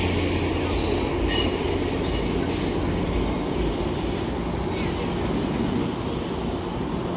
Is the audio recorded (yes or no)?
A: yes